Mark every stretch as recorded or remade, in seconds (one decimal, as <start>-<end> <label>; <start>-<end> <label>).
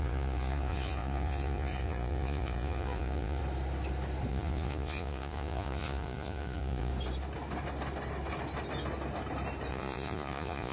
0.0-3.4 remade; 3.4-4.3 recorded; 4.3-6.9 remade; 6.9-9.7 recorded; 9.7-10.7 remade